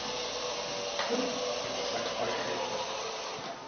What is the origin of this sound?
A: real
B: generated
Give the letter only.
A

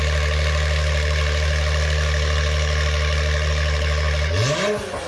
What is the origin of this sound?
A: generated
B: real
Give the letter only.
B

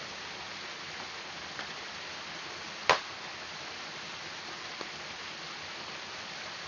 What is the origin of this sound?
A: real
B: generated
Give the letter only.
A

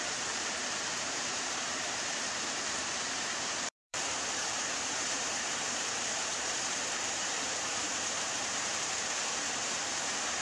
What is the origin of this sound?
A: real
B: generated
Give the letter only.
B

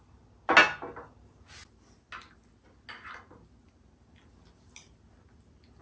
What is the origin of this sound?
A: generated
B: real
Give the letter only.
B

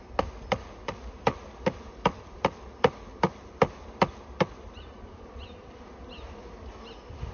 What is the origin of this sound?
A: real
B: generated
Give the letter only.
A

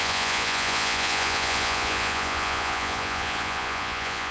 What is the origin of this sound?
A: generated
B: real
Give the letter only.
A